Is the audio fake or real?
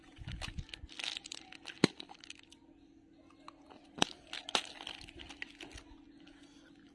real